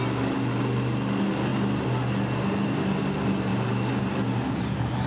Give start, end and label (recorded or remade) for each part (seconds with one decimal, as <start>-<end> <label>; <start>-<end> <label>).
0.0-5.1 recorded